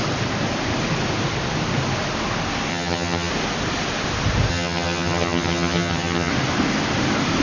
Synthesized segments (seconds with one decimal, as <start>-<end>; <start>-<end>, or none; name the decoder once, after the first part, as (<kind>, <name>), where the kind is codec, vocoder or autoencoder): 2.7-3.3 (vocoder, HiFi-GAN); 4.5-6.3